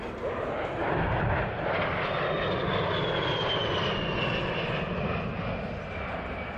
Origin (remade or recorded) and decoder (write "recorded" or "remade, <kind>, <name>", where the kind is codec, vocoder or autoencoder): recorded